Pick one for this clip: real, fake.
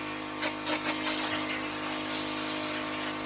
real